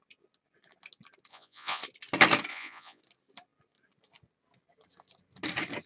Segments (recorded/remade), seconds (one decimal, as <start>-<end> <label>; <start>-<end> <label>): 0.0-1.3 recorded; 1.3-1.8 remade; 1.8-2.5 recorded; 2.5-3.0 remade; 3.0-5.9 recorded